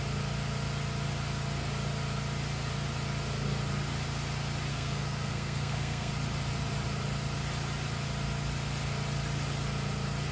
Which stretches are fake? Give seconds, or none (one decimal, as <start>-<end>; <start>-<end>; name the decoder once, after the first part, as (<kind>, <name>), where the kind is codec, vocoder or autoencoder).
4.7-6.1 (codec, SNAC)